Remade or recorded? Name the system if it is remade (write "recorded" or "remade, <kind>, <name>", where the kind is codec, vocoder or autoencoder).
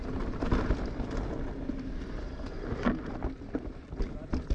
recorded